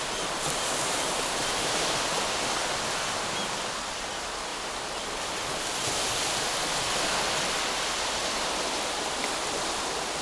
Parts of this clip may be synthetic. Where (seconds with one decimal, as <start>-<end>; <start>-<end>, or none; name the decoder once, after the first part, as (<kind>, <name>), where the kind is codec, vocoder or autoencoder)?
none